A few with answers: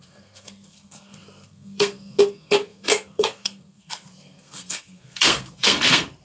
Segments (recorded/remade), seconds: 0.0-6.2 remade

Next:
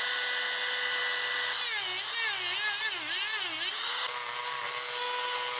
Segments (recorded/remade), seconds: 0.0-5.6 recorded

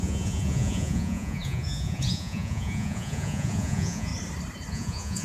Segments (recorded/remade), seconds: 0.0-4.1 remade; 4.1-4.7 recorded; 4.7-5.2 remade

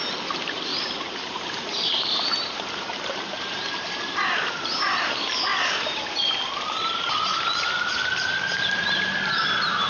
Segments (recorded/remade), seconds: 0.0-0.7 recorded; 0.7-5.1 remade; 5.1-5.5 recorded; 5.5-6.2 remade; 6.2-9.9 recorded

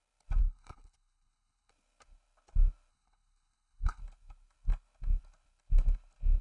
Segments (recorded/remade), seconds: 0.0-0.4 recorded; 0.4-1.7 remade; 1.7-2.9 recorded; 2.9-4.0 remade; 4.0-6.4 recorded

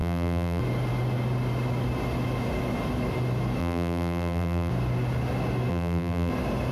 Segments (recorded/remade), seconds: 0.0-0.6 remade; 0.6-3.6 recorded; 3.6-4.7 remade; 4.7-5.7 recorded; 5.7-6.3 remade; 6.3-6.7 recorded